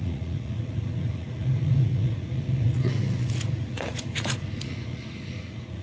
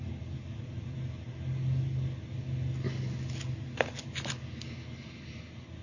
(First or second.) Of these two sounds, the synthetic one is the first